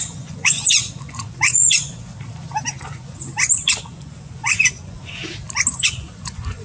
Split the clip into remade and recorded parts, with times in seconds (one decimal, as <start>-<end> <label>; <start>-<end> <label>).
0.0-2.1 remade; 2.1-2.8 recorded; 2.8-3.2 remade; 3.2-3.8 recorded; 3.8-5.2 remade; 5.2-5.7 recorded; 5.7-6.6 remade